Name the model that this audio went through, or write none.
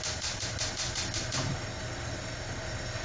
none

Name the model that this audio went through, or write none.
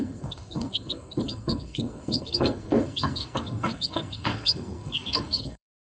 codec, SNAC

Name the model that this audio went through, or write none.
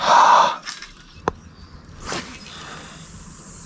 none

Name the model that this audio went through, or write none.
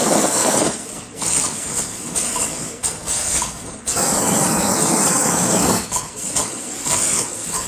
codec, SNAC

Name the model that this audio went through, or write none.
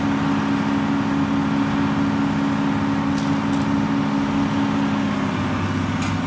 none